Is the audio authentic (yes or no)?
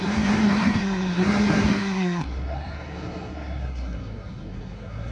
no